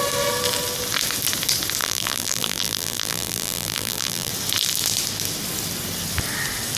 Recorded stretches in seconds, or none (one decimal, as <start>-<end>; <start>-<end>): 0.0-1.8; 4.3-6.8